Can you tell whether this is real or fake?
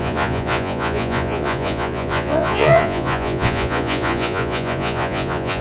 fake